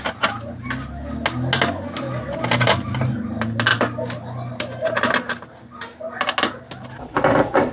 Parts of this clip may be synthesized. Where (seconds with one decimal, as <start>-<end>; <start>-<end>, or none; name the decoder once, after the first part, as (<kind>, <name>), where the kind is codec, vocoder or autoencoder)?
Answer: none

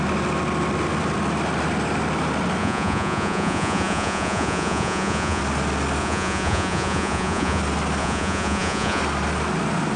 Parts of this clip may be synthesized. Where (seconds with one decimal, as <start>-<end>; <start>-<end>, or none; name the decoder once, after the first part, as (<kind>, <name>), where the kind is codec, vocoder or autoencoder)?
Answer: 2.6-5.4 (vocoder, Vocos); 6.0-7.6; 8.0-9.0